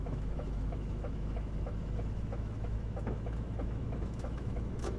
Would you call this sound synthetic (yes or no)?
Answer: yes